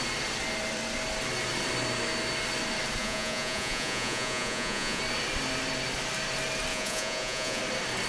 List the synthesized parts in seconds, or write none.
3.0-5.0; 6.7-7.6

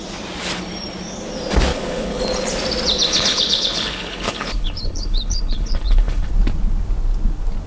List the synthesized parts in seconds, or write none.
1.7-2.2; 3.1-6.3

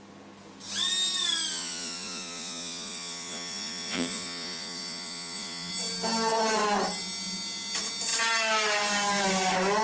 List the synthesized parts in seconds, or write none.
1.5-5.7

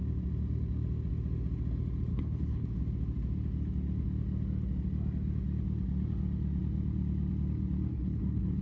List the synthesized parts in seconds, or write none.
2.1-2.8; 7.9-8.6